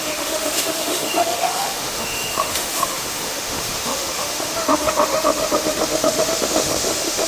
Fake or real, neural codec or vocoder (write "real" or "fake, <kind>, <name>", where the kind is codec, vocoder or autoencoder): fake, autoencoder, DAC-VAE